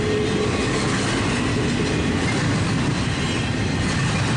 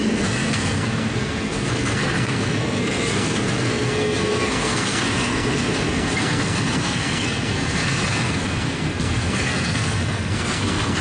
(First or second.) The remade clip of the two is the second